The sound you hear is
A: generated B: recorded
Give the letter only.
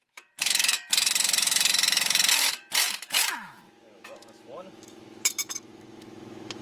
A